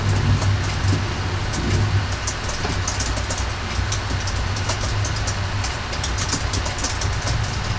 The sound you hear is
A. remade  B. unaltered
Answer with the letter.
B